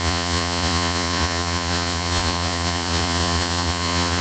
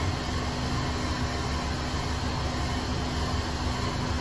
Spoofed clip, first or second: first